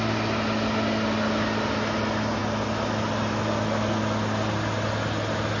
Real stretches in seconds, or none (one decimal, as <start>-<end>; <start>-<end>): 0.0-5.6